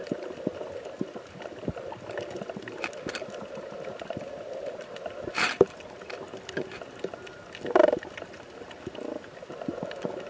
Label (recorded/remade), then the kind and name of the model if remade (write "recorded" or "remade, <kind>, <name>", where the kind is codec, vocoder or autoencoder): recorded